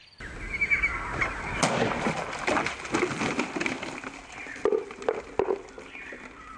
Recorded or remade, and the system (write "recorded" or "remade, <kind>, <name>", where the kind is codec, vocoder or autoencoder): recorded